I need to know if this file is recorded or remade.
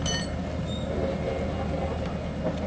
recorded